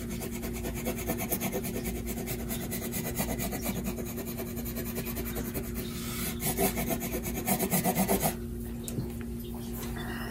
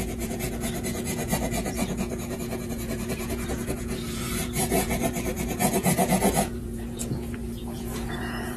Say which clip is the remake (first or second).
second